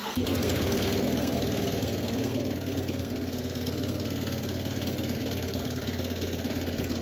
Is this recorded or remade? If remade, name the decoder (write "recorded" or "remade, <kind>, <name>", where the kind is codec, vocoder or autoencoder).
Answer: remade, codec, SNAC